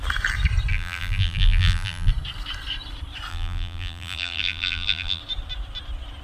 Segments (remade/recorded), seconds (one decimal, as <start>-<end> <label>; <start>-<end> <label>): 0.0-0.7 recorded; 0.7-2.1 remade; 2.1-3.3 recorded; 3.3-5.2 remade; 5.2-6.2 recorded